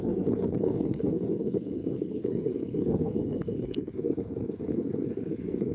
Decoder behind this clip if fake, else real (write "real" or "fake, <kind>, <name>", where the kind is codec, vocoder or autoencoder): fake, codec, SNAC